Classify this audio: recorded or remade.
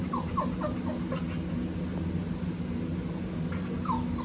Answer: recorded